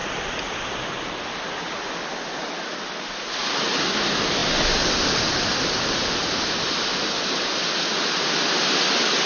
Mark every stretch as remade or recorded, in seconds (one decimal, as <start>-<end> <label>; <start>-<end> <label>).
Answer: 0.0-9.3 recorded